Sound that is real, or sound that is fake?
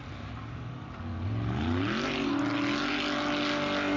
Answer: real